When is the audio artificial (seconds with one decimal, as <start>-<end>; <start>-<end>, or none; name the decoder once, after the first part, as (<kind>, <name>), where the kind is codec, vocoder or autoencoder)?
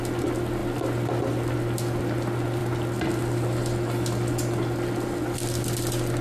none